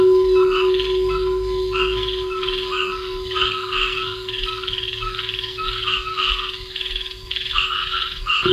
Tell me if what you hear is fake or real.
fake